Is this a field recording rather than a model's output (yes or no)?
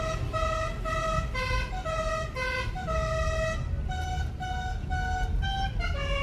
yes